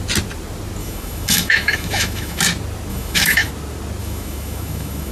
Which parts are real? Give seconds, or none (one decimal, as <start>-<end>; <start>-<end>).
0.0-0.8; 2.4-2.9; 3.5-4.0